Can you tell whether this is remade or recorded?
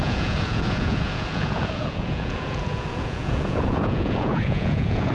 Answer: remade